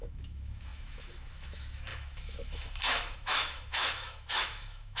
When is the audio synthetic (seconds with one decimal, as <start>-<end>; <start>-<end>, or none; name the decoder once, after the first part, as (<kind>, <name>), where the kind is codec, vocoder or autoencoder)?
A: 0.0-5.0 (autoencoder, DAC-VAE)